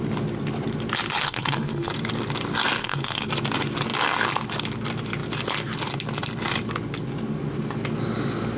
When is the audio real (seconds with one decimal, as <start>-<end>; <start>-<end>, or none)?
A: 0.0-1.2; 1.9-2.8; 3.3-8.6